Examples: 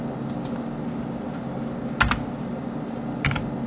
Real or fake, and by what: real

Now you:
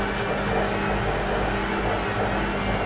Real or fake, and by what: real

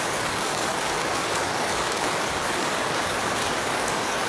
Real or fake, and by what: fake, codec, DAC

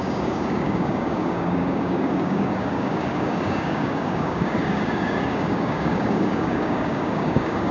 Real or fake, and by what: fake, codec, DAC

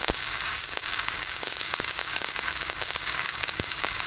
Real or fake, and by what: fake, codec, DAC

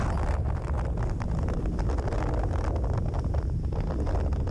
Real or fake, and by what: real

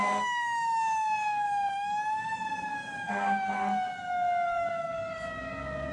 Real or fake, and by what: fake, codec, DAC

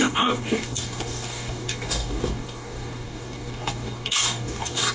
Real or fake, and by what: fake, codec, DAC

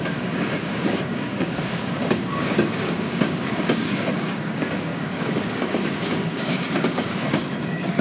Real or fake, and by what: fake, codec, DAC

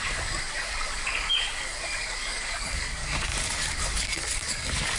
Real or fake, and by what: fake, codec, DAC